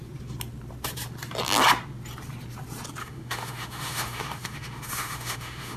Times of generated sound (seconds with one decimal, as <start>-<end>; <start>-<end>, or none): 3.0-5.8